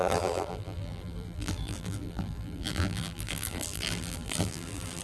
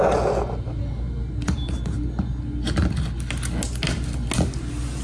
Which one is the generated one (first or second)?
first